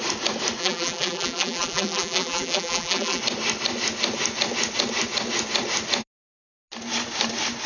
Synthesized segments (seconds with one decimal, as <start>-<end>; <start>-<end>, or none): 0.6-3.2